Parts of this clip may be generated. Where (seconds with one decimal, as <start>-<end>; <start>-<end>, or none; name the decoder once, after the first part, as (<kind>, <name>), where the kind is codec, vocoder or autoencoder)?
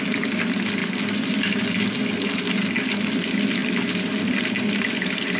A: none